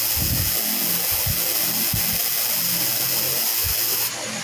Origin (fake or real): fake